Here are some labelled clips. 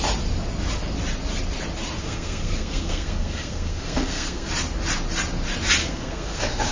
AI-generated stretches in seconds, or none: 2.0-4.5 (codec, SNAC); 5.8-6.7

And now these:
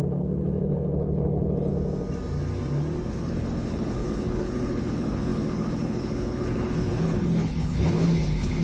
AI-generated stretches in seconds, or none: 0.0-1.7 (codec, HILCodec); 3.1-8.6

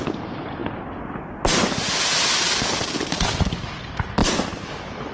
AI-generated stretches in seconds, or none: none

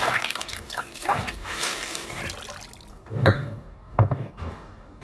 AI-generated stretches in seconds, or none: 0.0-2.2 (codec, DAC); 2.9-5.0

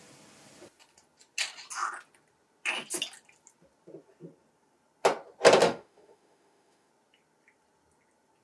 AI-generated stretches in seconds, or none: 5.6-6.9 (autoencoder, DAC-VAE)

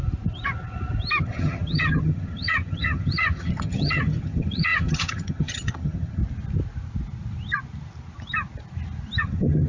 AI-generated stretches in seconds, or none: 1.2-6.2 (vocoder, HiFi-GAN); 9.2-9.7

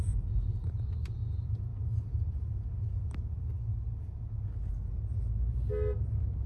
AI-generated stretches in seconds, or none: 1.7-3.0 (vocoder, Vocos); 3.7-4.7

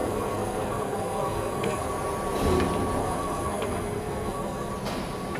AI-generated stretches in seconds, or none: 0.0-1.9 (codec, SNAC); 3.0-4.7